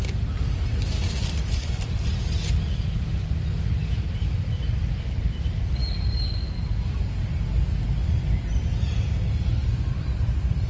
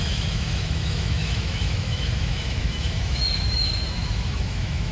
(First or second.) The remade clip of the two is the second